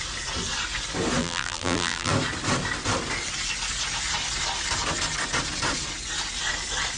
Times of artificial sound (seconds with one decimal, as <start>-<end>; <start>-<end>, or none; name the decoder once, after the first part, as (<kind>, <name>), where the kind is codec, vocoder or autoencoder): 1.2-2.1 (vocoder, BigVGAN v2)